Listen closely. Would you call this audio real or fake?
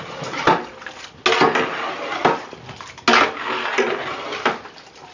real